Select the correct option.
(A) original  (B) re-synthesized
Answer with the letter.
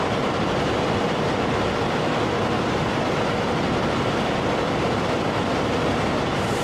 B